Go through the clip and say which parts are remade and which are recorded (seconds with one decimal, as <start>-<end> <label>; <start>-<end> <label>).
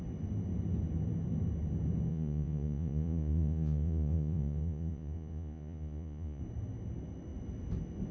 0.0-2.1 recorded; 2.1-6.4 remade; 6.4-8.1 recorded